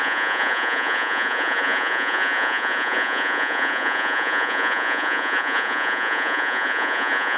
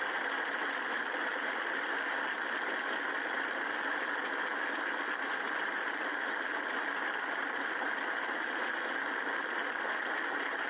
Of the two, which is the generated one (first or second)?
first